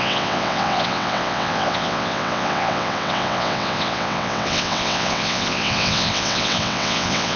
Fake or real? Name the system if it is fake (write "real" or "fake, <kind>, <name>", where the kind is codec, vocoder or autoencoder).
fake, vocoder, WaveNeXt